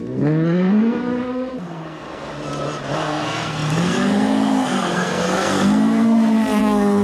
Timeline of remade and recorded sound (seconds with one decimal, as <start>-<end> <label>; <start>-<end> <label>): 0.0-2.3 remade; 2.3-2.9 recorded; 2.9-7.0 remade